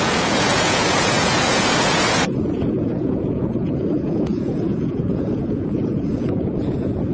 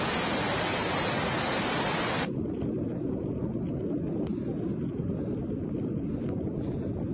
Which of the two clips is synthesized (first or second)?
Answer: first